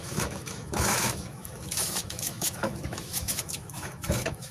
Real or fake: fake